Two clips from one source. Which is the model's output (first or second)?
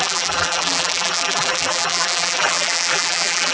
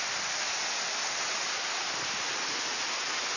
first